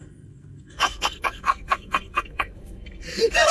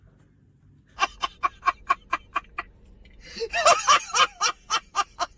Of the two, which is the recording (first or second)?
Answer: second